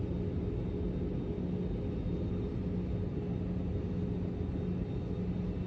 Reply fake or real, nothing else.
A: real